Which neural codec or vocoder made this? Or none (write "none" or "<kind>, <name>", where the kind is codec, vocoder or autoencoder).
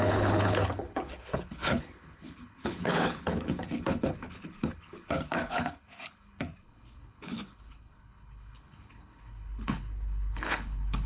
codec, HILCodec